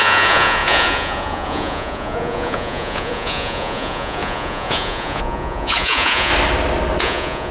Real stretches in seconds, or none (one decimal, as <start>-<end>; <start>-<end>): 6.3-7.0